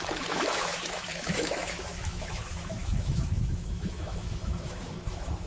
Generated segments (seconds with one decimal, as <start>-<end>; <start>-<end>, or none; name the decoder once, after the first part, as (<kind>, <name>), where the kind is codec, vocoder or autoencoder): 0.0-5.5 (autoencoder, DAC-VAE)